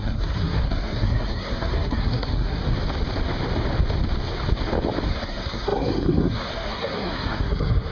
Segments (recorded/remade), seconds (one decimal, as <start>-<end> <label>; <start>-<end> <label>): 0.0-2.6 remade; 2.6-5.1 recorded; 5.1-7.9 remade